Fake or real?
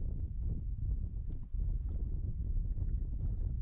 fake